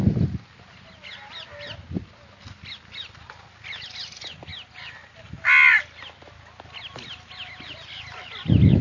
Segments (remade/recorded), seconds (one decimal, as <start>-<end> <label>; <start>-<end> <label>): 0.0-8.8 recorded